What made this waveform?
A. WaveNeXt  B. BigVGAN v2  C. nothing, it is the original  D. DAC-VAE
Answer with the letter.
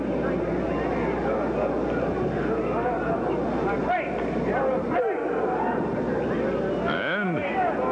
C